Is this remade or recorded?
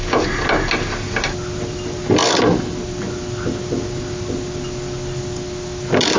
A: recorded